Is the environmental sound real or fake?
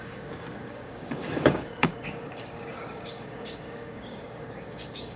fake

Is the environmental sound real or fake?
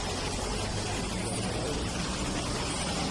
real